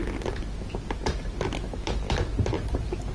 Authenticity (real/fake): real